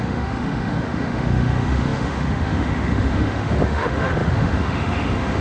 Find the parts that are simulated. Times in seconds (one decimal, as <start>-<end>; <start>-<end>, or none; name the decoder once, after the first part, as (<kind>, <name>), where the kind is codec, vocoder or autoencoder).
0.0-5.4 (autoencoder, DAC-VAE)